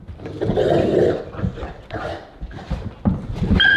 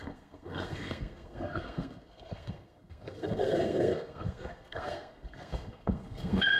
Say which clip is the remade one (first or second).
second